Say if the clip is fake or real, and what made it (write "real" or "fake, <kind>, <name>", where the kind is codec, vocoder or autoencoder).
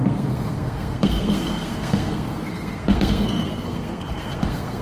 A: fake, codec, SNAC